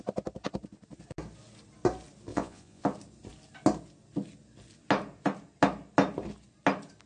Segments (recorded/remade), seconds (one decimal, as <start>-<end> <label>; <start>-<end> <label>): 0.0-2.3 recorded; 2.3-2.8 remade; 2.8-7.1 recorded